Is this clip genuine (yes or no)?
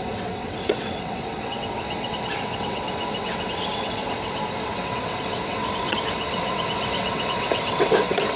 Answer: no